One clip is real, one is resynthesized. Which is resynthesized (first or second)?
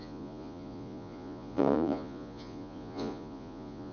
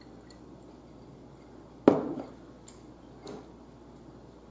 first